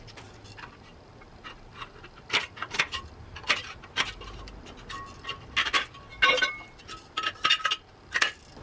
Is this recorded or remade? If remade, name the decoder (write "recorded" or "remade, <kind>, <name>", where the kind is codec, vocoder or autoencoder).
recorded